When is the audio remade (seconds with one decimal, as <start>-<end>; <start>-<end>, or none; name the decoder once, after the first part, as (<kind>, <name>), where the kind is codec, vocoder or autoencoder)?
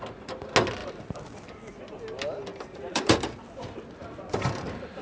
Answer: 0.8-1.4 (vocoder, BigVGAN v2); 2.5-3.6; 4.0-5.0